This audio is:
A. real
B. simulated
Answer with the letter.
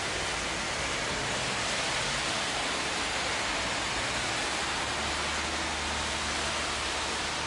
A